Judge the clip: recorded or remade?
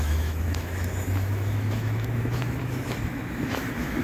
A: remade